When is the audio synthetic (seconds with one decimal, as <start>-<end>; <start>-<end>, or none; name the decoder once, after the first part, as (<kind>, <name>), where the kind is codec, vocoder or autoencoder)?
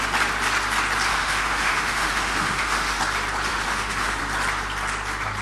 1.1-3.0 (autoencoder, DAC-VAE); 3.5-4.2